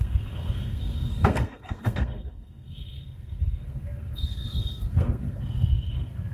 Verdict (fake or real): fake